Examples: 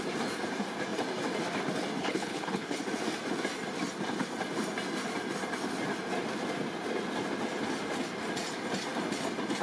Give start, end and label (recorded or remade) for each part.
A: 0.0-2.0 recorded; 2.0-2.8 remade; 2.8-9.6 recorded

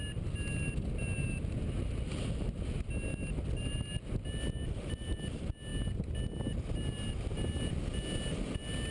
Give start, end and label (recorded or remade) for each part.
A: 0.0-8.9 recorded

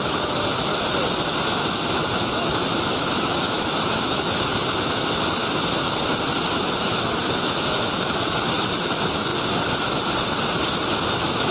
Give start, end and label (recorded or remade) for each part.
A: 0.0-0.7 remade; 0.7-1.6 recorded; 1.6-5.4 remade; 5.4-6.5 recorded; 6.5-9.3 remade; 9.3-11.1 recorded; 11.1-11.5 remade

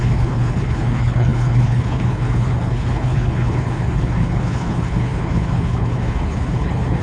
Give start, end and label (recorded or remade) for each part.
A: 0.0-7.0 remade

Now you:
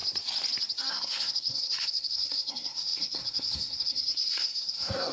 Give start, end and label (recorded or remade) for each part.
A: 0.0-0.9 recorded; 0.9-5.1 remade

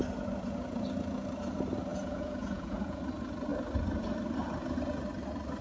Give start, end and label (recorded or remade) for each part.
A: 0.0-1.9 recorded; 1.9-3.0 remade; 3.0-5.6 recorded

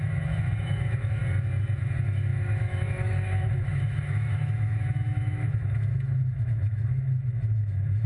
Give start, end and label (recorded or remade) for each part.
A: 0.0-1.2 remade; 1.2-1.8 recorded; 1.8-8.1 remade

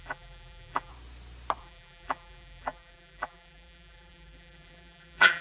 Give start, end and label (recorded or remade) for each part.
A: 0.0-0.9 remade; 0.9-1.6 recorded; 1.6-5.4 remade